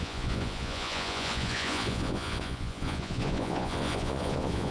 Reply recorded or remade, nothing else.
remade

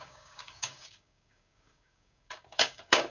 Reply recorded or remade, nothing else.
remade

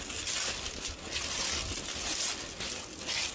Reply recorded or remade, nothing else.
recorded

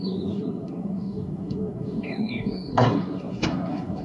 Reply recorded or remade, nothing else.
remade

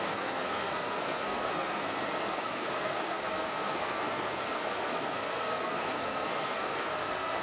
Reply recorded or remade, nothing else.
remade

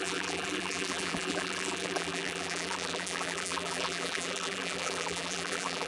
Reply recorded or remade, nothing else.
remade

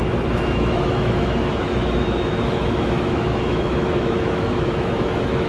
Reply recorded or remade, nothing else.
remade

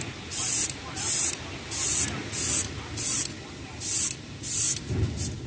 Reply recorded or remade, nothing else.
recorded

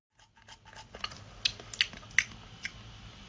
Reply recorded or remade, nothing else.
recorded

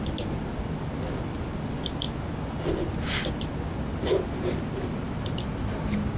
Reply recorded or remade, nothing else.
recorded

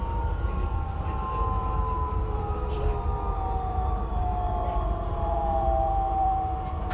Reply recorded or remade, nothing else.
remade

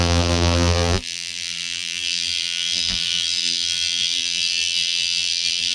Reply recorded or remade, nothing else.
remade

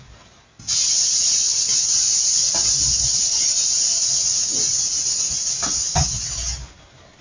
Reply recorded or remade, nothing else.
recorded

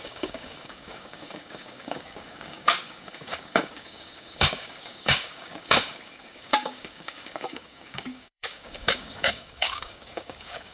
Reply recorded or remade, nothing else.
remade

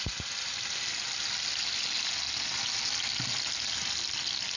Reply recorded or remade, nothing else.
recorded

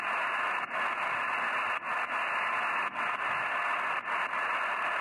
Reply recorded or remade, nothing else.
recorded